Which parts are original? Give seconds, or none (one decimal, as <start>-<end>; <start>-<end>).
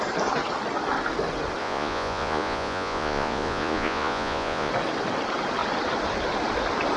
0.0-1.6; 4.7-7.0